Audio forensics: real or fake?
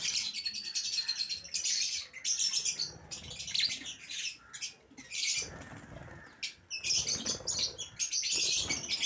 real